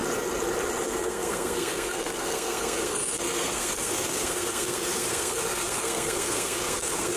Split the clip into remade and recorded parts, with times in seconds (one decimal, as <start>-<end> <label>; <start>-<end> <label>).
0.0-0.8 recorded; 0.8-7.2 remade